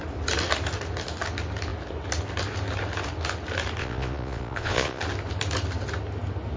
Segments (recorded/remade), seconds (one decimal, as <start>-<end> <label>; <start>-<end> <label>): 0.0-3.8 recorded; 3.8-5.0 remade; 5.0-6.6 recorded